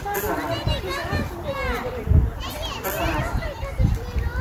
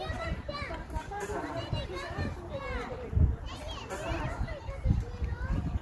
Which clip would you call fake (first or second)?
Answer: second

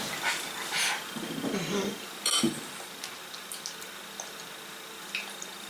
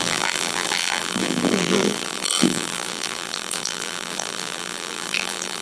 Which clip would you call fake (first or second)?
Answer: second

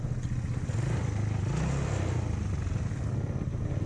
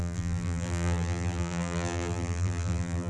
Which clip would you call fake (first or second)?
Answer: second